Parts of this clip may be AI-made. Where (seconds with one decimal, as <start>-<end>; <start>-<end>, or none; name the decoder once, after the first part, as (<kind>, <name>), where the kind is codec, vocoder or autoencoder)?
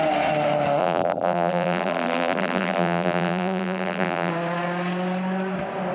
0.8-4.3 (vocoder, BigVGAN v2)